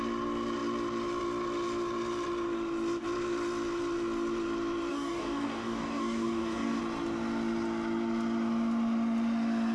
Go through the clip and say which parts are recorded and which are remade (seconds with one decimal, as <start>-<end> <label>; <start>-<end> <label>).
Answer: 0.0-4.9 recorded; 4.9-6.8 remade; 6.8-9.7 recorded